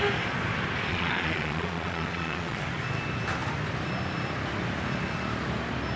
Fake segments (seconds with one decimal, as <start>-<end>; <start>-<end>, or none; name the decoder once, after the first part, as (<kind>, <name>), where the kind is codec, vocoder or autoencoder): 0.9-2.6 (vocoder, Vocos)